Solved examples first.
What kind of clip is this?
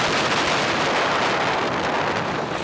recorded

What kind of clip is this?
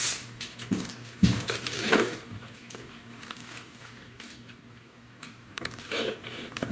remade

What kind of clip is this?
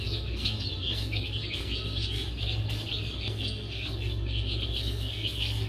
remade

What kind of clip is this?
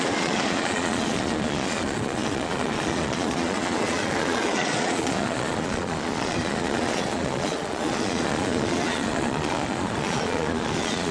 remade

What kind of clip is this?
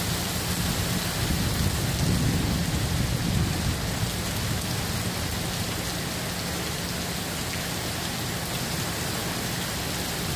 recorded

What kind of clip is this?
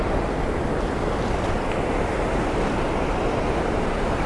recorded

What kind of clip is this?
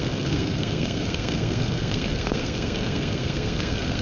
remade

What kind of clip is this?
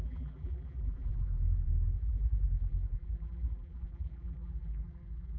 remade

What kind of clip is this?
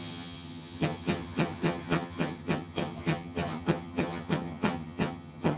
remade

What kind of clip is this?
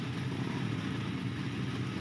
recorded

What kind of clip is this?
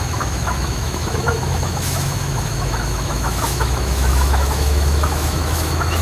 remade